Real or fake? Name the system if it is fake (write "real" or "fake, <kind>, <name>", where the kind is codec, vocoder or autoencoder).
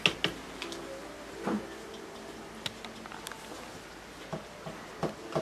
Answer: real